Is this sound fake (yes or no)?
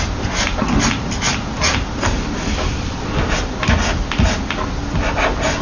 no